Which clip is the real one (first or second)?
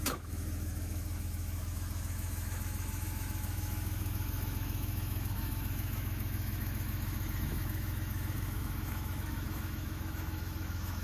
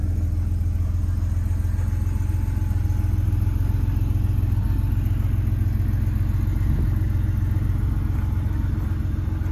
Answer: second